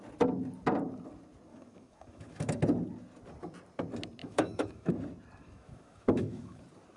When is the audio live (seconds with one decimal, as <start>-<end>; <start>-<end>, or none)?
0.0-1.5; 2.6-4.2; 4.9-5.4; 6.6-7.0